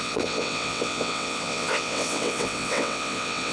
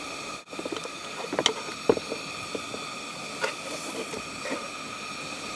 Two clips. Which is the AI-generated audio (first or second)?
first